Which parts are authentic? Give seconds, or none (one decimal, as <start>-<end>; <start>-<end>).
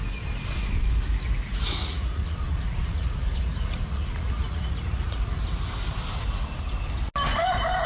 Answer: 0.0-1.8; 5.4-7.9